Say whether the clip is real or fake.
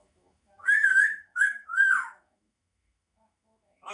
fake